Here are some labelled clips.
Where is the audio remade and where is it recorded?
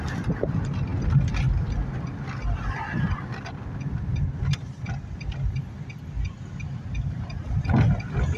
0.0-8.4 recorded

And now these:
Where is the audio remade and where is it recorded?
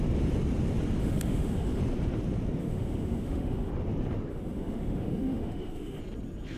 0.0-1.0 recorded; 1.0-1.8 remade; 1.8-2.6 recorded; 2.6-3.7 remade; 3.7-4.3 recorded; 4.3-6.0 remade; 6.0-6.6 recorded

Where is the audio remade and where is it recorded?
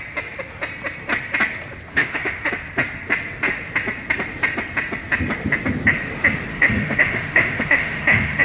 0.0-1.9 recorded; 1.9-2.5 remade; 2.5-6.5 recorded; 6.5-8.4 remade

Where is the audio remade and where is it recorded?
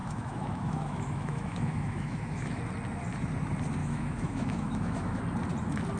0.0-2.6 remade; 2.6-3.8 recorded; 3.8-5.2 remade; 5.2-6.0 recorded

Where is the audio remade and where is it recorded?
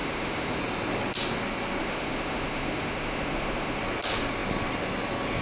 0.0-0.6 remade; 0.6-1.8 recorded; 1.8-3.8 remade; 3.8-5.4 recorded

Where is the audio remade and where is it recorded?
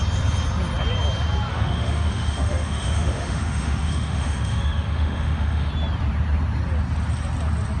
0.0-1.5 recorded; 1.5-5.7 remade; 5.7-7.8 recorded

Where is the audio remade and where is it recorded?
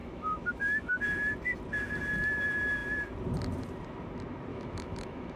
0.0-1.0 remade; 1.0-4.5 recorded; 4.5-5.4 remade